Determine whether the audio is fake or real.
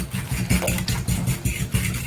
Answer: real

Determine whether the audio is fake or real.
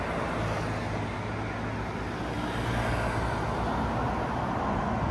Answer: real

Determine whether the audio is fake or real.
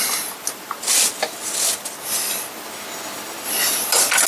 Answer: real